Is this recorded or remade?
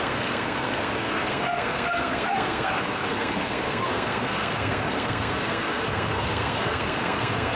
remade